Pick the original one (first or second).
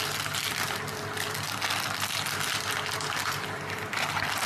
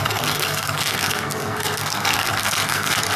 first